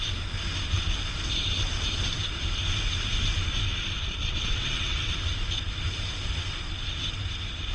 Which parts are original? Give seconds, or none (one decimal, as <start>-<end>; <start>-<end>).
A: 0.0-4.2; 5.1-7.7